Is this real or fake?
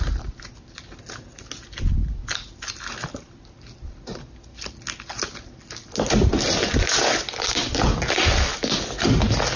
real